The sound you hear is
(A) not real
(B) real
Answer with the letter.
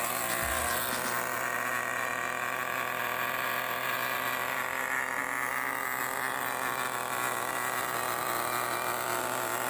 B